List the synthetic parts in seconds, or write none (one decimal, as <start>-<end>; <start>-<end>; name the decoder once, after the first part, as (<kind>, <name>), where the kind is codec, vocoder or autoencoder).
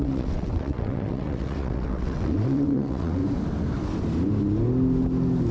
0.0-3.2 (vocoder, WaveNeXt)